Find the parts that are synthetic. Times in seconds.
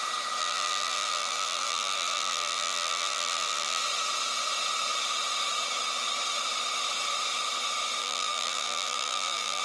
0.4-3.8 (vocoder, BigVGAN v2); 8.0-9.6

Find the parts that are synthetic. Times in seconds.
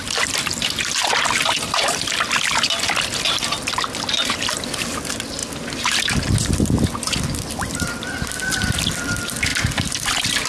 0.0-1.0 (vocoder, BigVGAN v2); 4.5-5.4; 7.5-9.5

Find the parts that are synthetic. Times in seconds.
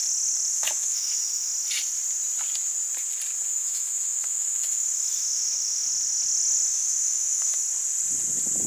0.5-1.5 (autoencoder, DAC-VAE); 3.5-5.8; 6.7-7.6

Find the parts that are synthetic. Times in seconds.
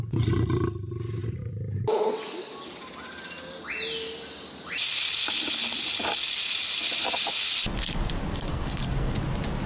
8.5-9.1 (codec, SNAC)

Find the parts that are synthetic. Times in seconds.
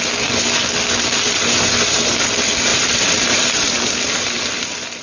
2.7-5.0 (vocoder, BigVGAN v2)